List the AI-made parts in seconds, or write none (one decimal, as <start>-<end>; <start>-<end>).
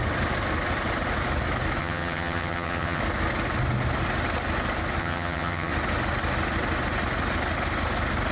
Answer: 1.8-3.0; 5.0-5.7